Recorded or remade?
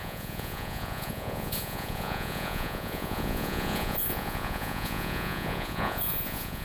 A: remade